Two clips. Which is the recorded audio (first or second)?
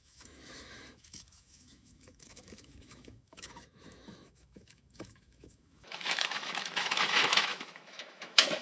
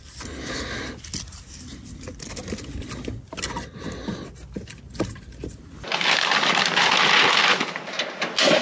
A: second